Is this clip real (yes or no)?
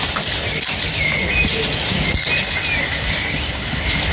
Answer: yes